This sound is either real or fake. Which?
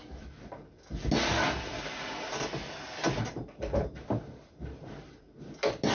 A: real